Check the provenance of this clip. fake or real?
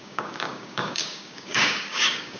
fake